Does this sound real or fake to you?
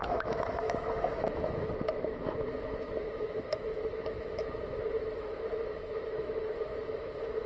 fake